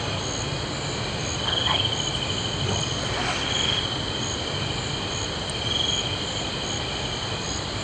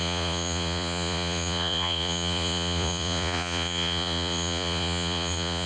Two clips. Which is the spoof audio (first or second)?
second